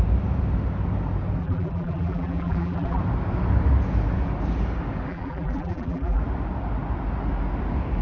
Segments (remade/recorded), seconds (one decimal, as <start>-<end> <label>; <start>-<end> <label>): 0.0-1.4 recorded; 1.4-3.0 remade; 3.0-5.1 recorded; 5.1-6.2 remade; 6.2-8.0 recorded